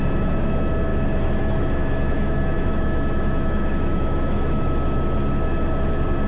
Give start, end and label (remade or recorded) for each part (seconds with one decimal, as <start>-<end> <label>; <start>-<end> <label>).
0.0-0.9 recorded; 0.9-4.6 remade; 4.6-6.3 recorded